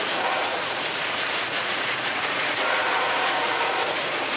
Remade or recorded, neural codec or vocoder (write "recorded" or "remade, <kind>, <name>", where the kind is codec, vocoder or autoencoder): remade, vocoder, Vocos